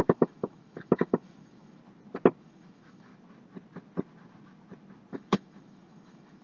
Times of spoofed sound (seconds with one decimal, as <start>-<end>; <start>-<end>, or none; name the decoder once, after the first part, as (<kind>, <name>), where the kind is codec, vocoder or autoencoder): 0.0-1.8 (autoencoder, DAC-VAE); 2.4-3.1; 5.1-6.4